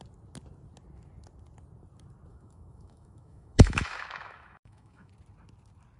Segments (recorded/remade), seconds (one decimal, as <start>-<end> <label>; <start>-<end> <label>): 0.0-2.3 recorded; 2.3-5.1 remade; 5.1-6.0 recorded